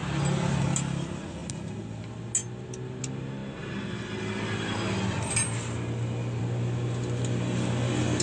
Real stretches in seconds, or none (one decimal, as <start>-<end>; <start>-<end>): 0.0-8.2